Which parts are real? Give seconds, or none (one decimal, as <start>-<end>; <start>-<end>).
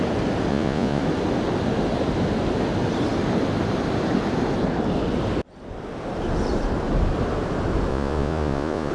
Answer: 0.0-0.5; 1.0-7.9